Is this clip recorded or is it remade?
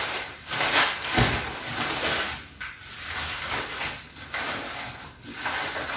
recorded